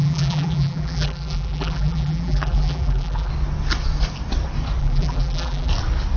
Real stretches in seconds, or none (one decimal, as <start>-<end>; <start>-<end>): 3.3-4.8; 5.7-6.2

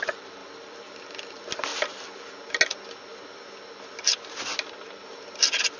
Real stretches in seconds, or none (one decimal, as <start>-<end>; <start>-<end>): 0.0-0.4; 1.0-5.8